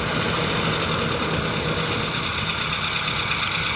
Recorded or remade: recorded